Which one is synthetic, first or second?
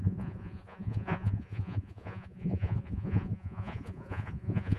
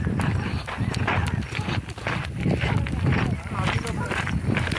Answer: first